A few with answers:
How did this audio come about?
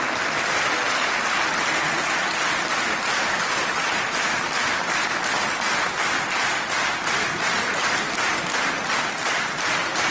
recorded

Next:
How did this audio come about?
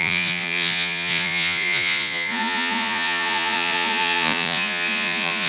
remade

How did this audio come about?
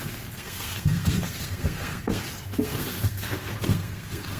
remade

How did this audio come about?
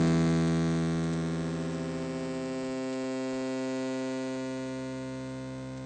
recorded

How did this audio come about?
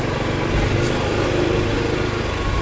recorded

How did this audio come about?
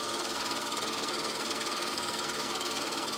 remade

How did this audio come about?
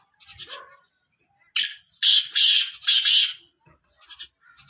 recorded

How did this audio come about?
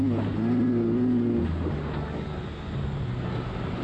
recorded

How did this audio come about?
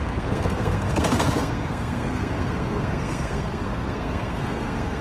remade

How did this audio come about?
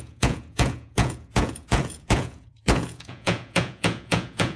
remade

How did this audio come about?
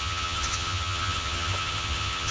remade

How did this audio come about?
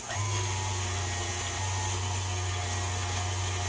recorded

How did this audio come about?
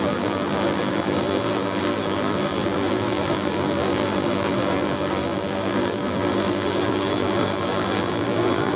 remade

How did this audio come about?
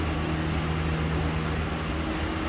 recorded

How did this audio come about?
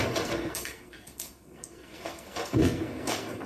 remade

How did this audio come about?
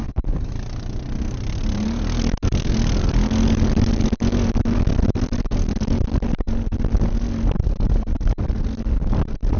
recorded